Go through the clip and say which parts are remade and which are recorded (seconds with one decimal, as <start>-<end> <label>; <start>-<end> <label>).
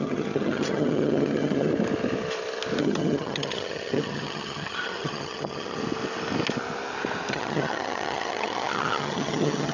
0.0-1.7 remade; 1.7-2.8 recorded; 2.8-5.8 remade; 5.8-7.3 recorded; 7.3-9.7 remade